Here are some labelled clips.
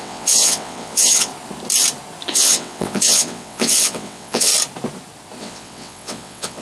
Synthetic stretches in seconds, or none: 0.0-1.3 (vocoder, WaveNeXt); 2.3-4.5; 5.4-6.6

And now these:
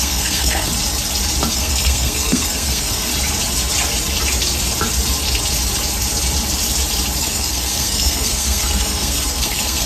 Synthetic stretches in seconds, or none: 0.0-0.7 (codec, SNAC); 1.5-3.1; 7.2-9.9

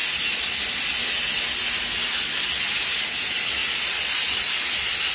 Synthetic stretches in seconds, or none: none